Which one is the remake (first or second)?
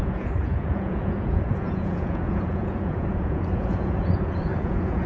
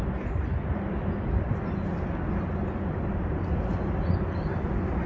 first